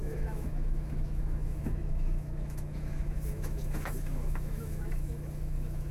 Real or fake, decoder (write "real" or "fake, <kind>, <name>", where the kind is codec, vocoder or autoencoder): fake, autoencoder, DAC-VAE